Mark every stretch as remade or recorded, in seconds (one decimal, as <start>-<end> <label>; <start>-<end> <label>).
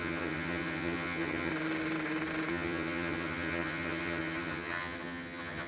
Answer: 0.0-1.5 remade; 1.5-2.5 recorded; 2.5-5.7 remade